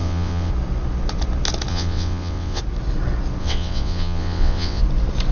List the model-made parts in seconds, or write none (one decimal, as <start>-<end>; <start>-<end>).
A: 0.0-0.5; 1.7-2.6; 3.4-4.8